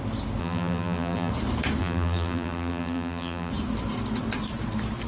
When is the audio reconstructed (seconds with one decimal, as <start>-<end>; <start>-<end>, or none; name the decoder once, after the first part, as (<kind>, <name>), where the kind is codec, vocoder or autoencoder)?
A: 0.4-1.3 (vocoder, BigVGAN v2); 1.8-3.5